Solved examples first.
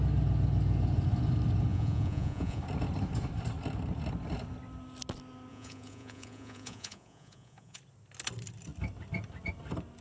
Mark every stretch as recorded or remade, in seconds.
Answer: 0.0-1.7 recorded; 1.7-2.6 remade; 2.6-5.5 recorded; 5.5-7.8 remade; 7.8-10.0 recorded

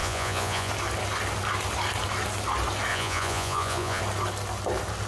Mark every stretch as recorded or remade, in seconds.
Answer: 0.0-0.7 remade; 0.7-2.9 recorded; 2.9-4.0 remade; 4.0-5.1 recorded

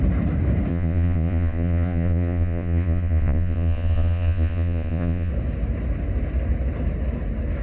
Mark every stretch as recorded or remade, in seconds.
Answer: 0.0-0.7 recorded; 0.7-5.3 remade; 5.3-7.6 recorded

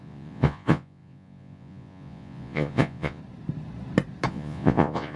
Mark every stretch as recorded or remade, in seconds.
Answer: 0.0-3.2 remade; 3.2-4.3 recorded; 4.3-5.2 remade

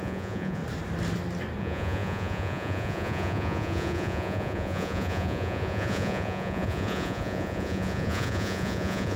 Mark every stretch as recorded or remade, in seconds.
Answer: 0.0-0.6 remade; 0.6-1.6 recorded; 1.6-9.2 remade

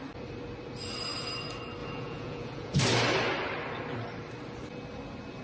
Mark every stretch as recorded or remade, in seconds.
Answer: 0.0-1.8 recorded; 1.8-2.8 remade; 2.8-5.4 recorded

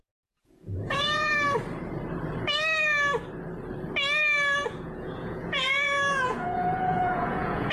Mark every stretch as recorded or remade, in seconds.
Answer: 0.0-1.3 remade; 1.3-4.7 recorded; 4.7-7.7 remade

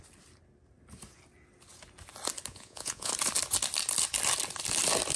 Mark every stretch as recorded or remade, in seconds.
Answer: 0.0-2.5 recorded; 2.5-3.1 remade; 3.1-5.2 recorded